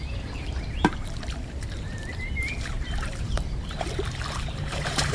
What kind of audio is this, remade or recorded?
remade